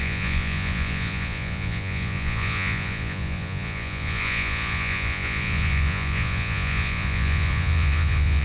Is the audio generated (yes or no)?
yes